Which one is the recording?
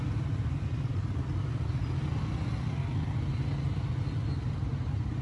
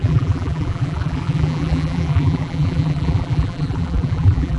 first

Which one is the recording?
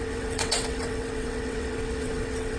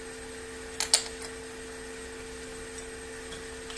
second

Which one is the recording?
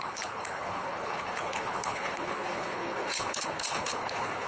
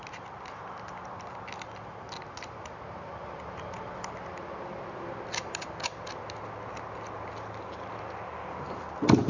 second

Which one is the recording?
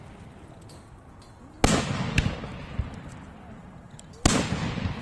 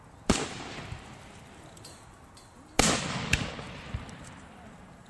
first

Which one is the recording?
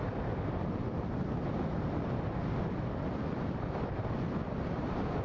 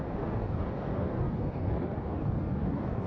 first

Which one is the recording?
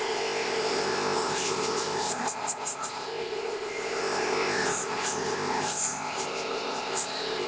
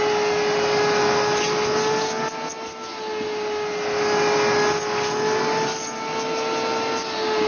second